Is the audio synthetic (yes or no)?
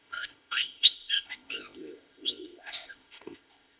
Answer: yes